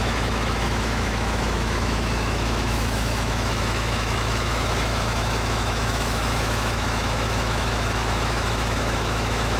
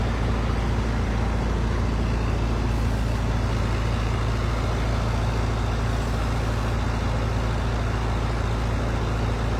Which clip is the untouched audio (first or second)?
second